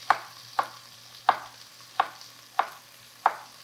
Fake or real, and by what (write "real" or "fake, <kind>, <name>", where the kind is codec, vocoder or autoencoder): real